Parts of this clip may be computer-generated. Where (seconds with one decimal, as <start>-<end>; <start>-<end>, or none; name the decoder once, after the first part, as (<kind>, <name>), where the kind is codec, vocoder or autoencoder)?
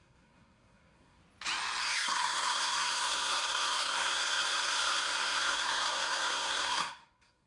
0.0-1.2 (codec, SNAC); 1.8-7.5